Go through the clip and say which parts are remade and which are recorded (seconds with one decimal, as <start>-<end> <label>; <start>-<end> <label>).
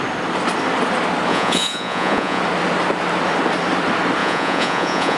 0.0-1.3 recorded; 1.3-2.4 remade; 2.4-4.2 recorded; 4.2-5.2 remade